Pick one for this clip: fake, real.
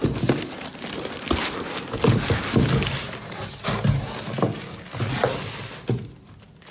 real